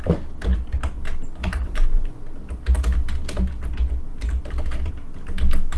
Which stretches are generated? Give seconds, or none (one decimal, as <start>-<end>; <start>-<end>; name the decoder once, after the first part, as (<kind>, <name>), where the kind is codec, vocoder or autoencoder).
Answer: 1.4-2.2 (vocoder, Vocos)